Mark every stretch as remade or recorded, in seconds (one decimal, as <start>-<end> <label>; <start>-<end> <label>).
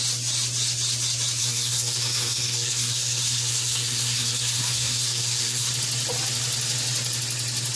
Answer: 0.0-1.4 recorded; 1.4-5.7 remade; 5.7-7.8 recorded